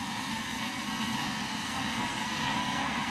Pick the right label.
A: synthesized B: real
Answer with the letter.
A